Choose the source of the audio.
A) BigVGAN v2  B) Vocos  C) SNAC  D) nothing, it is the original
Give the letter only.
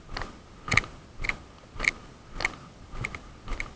D